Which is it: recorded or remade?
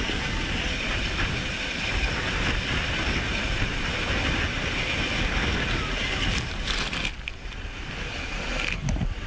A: recorded